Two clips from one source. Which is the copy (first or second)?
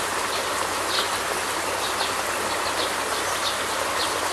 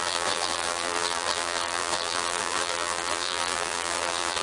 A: second